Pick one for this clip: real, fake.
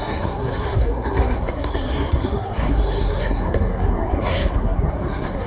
fake